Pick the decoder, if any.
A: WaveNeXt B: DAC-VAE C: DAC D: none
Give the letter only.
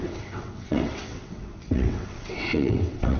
A